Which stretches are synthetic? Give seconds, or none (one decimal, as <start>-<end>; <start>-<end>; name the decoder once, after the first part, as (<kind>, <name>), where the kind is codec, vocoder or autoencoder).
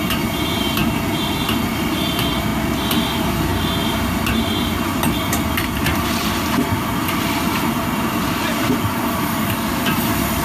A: 0.0-0.8 (vocoder, BigVGAN v2); 1.5-2.5; 3.0-3.5; 4.5-10.4